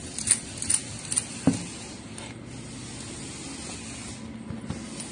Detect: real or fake real